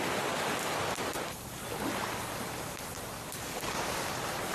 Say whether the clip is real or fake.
real